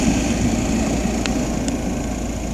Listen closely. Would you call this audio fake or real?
real